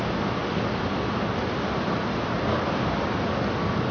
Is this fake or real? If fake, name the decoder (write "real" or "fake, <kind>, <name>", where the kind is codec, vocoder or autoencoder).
real